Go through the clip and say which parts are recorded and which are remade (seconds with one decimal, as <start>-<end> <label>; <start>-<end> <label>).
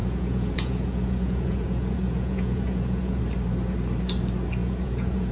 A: 0.0-3.2 remade; 3.2-4.6 recorded; 4.6-5.3 remade